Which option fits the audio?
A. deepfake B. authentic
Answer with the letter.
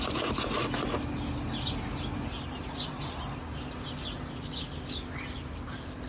B